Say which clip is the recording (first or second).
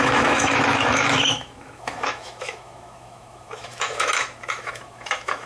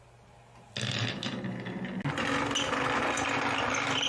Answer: second